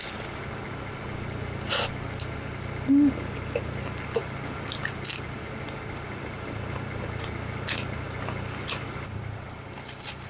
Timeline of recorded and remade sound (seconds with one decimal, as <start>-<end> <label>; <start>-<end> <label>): 0.0-10.3 recorded